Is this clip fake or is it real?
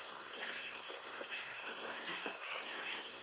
fake